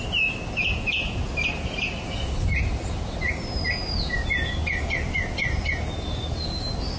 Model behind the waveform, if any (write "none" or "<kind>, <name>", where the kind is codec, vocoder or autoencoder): none